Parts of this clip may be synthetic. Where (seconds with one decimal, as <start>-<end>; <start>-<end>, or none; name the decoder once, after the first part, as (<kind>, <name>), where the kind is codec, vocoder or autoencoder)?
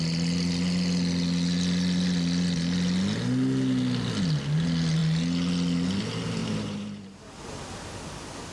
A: 6.4-7.4 (vocoder, BigVGAN v2)